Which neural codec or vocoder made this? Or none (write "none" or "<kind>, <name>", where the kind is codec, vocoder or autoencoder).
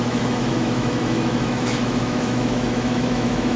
autoencoder, DAC-VAE